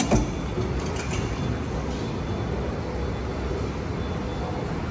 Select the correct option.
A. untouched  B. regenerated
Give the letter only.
A